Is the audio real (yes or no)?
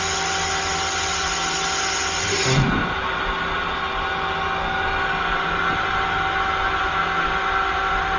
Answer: yes